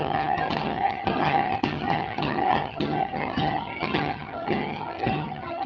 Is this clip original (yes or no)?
no